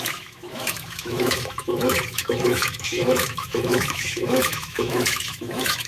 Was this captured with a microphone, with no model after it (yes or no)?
no